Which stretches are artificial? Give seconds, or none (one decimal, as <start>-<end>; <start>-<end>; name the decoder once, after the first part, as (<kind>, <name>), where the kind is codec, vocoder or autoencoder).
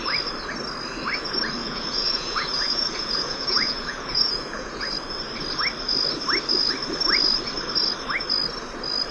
1.6-4.9 (vocoder, Vocos)